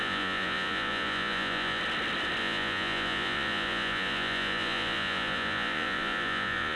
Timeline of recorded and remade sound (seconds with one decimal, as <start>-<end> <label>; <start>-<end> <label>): 0.0-1.8 remade; 1.8-2.4 recorded; 2.4-6.8 remade